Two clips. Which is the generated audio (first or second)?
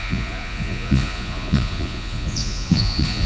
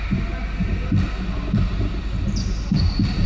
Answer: first